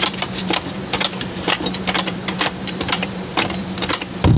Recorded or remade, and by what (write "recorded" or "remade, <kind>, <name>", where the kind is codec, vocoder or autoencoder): remade, vocoder, BigVGAN v2